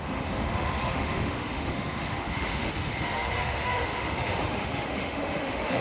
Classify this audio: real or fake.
fake